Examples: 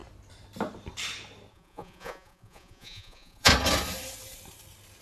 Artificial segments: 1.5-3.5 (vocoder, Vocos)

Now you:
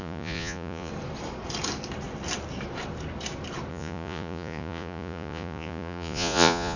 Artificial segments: 0.0-0.9 (vocoder, Vocos); 3.7-6.8

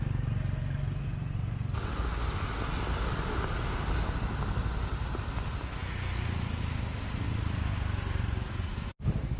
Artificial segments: none

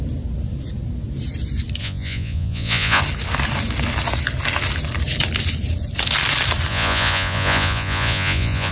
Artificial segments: 1.8-3.0 (vocoder, Vocos); 6.7-8.7

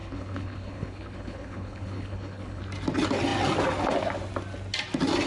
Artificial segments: 0.0-2.6 (codec, HILCodec)